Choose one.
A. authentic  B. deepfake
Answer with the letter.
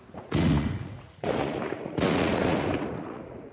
B